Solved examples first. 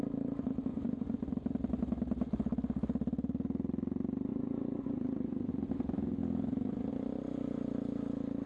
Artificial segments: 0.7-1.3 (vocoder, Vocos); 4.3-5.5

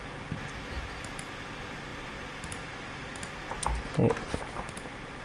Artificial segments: 1.9-2.7 (vocoder, BigVGAN v2)

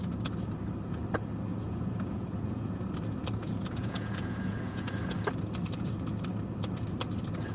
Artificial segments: 1.5-2.8 (vocoder, Vocos); 3.4-5.1

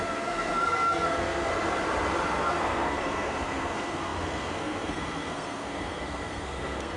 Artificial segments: 0.0-1.5 (codec, SNAC); 2.4-7.0

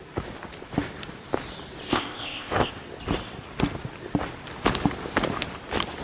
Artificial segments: 1.9-2.7 (codec, ZipCodec)

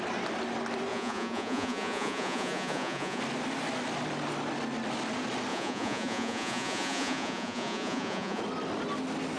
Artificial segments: 0.9-3.2 (vocoder, Vocos); 5.5-8.4

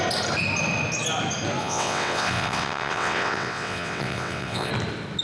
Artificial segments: 1.6-4.7 (vocoder, WaveNeXt)

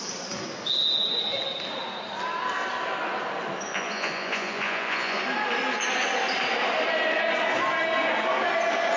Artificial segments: 3.7-5.2 (vocoder, Vocos)